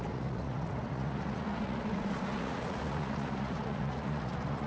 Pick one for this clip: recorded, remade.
remade